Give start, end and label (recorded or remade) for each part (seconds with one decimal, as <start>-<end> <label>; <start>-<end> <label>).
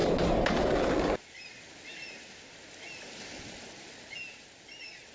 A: 0.0-5.1 recorded